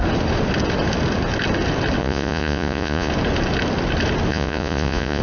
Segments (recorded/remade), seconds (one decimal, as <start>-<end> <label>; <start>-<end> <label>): 0.0-2.0 recorded; 2.0-3.1 remade; 3.1-4.3 recorded; 4.3-5.2 remade